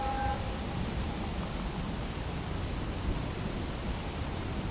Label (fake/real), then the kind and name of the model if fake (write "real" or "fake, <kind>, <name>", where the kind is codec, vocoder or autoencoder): real